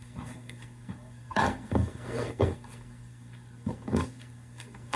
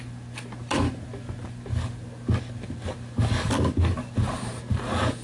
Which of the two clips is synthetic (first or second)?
first